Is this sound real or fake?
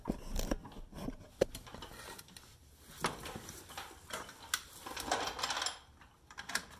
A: real